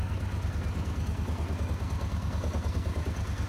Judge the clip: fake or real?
fake